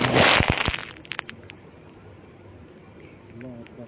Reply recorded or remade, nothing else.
recorded